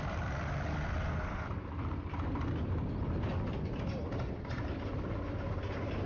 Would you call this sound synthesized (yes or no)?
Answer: no